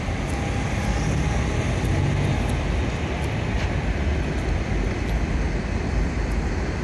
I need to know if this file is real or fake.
real